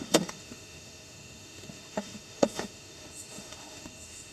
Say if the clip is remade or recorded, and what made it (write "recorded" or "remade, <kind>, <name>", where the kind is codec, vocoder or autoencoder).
remade, autoencoder, DAC-VAE